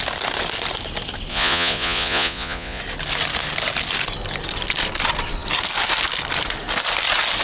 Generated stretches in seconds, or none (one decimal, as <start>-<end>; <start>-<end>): 1.3-2.8